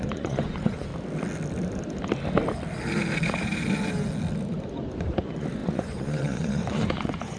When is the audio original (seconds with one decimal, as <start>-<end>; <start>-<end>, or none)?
0.9-5.0